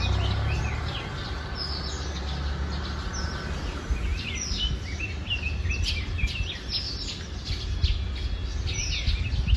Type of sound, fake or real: real